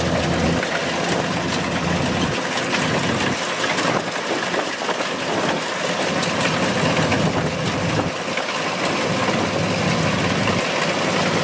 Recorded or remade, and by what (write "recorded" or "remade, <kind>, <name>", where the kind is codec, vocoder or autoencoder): recorded